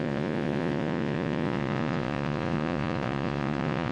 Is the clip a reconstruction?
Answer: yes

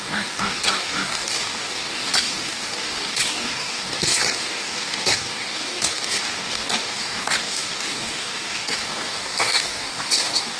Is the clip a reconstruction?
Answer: yes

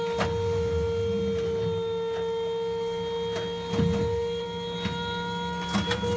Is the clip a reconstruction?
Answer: no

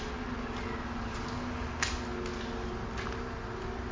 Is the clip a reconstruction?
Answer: no